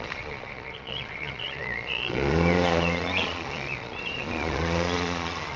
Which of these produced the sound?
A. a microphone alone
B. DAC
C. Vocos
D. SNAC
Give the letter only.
C